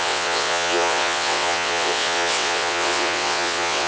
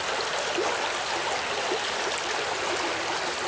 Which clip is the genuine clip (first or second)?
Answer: second